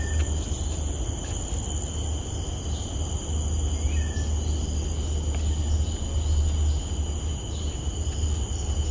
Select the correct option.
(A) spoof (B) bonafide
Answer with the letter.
B